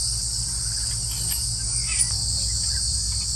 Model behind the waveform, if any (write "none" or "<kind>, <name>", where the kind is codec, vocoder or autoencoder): none